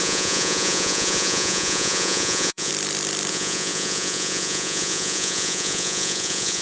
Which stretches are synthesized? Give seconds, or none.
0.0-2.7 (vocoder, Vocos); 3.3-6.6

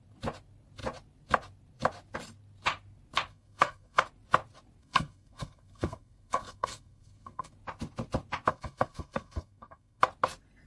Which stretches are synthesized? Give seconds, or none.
3.3-4.0 (codec, SNAC); 4.8-7.5; 8.5-10.0

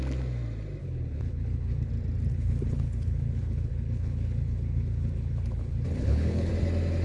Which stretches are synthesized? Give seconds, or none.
0.8-1.9 (codec, HILCodec); 2.3-6.5

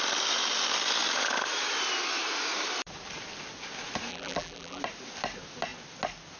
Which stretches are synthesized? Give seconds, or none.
4.1-4.8 (vocoder, BigVGAN v2)

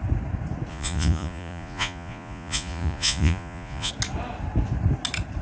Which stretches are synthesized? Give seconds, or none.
0.7-3.9 (vocoder, Vocos)